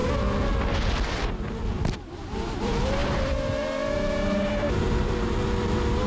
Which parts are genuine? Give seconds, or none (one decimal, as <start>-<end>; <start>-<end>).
0.0-2.6